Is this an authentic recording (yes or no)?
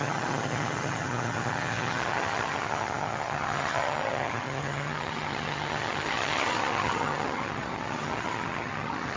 no